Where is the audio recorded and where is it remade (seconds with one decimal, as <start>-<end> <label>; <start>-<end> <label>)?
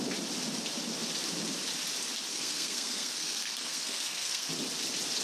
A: 0.0-2.3 recorded; 2.3-4.5 remade; 4.5-5.2 recorded